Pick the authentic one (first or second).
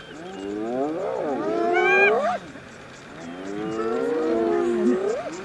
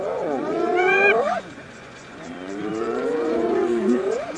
first